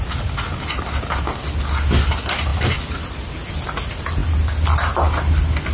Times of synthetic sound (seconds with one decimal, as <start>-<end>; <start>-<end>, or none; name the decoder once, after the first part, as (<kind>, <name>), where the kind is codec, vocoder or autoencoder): none